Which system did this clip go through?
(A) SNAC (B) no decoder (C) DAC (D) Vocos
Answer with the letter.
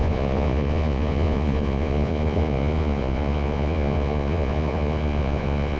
D